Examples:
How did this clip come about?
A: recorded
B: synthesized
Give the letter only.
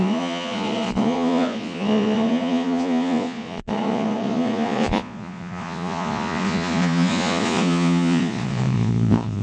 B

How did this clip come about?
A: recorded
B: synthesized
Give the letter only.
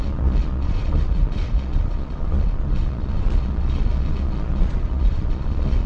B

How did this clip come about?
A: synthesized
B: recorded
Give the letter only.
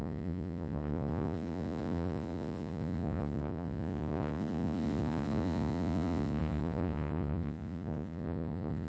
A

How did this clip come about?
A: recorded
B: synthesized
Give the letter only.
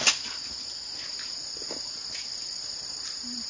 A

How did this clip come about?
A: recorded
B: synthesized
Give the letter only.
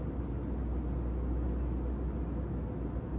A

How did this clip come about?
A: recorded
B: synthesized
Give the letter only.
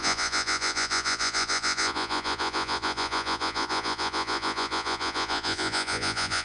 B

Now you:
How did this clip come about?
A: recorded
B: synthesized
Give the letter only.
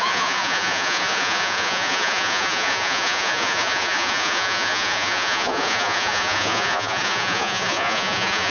B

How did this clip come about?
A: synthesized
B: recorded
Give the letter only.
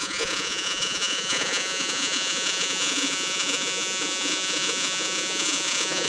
A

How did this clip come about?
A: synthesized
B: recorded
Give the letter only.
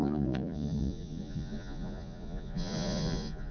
A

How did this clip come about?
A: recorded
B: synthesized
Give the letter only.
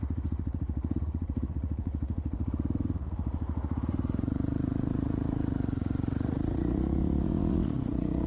B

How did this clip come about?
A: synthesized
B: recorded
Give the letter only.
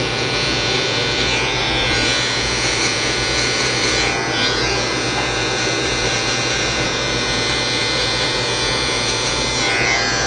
A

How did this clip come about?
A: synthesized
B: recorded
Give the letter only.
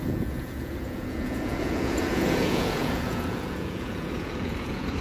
A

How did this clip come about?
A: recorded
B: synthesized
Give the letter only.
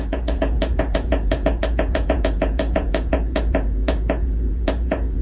B